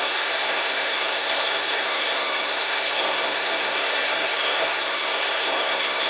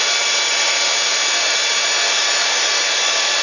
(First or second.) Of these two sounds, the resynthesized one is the first